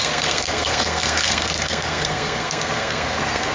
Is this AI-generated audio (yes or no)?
yes